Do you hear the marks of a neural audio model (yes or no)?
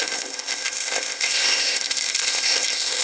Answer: yes